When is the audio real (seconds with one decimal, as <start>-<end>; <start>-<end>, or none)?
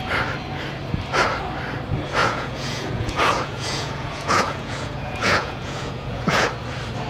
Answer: 0.0-2.2; 6.5-7.1